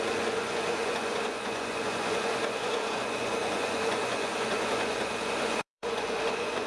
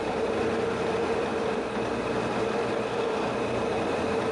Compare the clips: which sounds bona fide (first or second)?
second